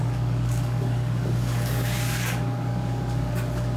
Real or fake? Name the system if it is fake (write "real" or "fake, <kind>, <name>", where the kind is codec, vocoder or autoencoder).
fake, codec, DAC